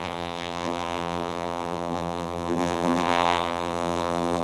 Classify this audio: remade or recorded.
remade